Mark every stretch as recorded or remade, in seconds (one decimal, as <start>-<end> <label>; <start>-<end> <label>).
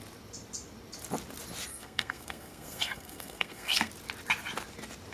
0.0-1.7 recorded; 1.7-3.9 remade; 3.9-5.1 recorded